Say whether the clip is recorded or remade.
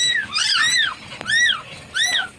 recorded